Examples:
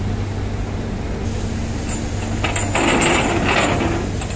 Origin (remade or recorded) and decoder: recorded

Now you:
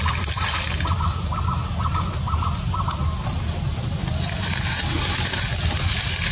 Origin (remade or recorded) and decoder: recorded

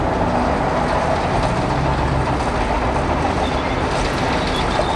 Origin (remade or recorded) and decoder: recorded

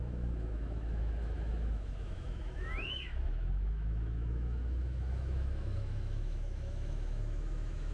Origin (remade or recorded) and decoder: remade, autoencoder, DAC-VAE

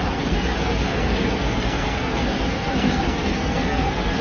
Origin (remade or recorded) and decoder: remade, codec, SNAC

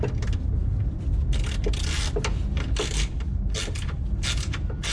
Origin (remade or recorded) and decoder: recorded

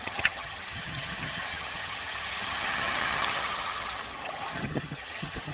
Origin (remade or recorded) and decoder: remade, vocoder, HiFi-GAN